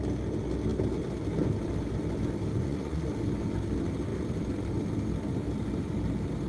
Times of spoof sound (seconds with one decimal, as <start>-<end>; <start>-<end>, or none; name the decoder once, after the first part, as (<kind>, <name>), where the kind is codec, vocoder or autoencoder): 2.5-3.1 (vocoder, Vocos)